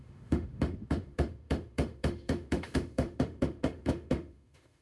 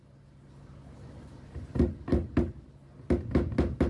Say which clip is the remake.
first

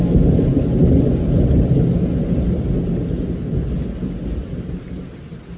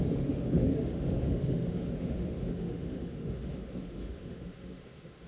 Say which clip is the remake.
second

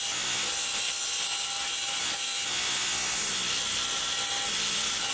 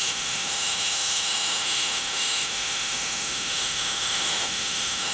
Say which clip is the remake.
second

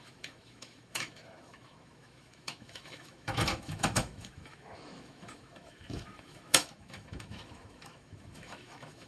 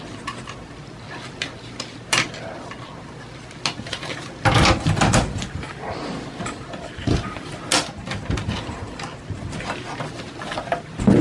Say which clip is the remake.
first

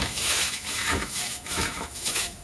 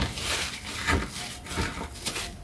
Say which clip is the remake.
first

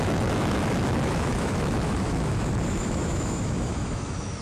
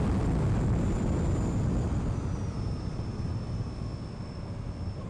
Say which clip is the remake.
first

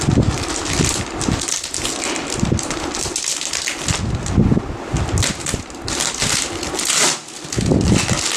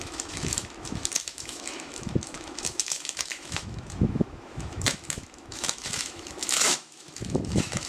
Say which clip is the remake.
second